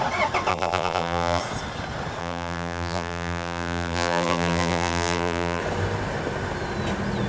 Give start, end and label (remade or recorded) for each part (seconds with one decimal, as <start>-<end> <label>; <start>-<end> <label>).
0.0-0.5 recorded; 0.5-1.4 remade; 1.4-2.2 recorded; 2.2-5.6 remade; 5.6-7.3 recorded